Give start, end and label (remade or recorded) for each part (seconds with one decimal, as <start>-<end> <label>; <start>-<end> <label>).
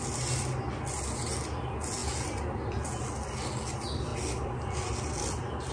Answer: 0.0-5.7 recorded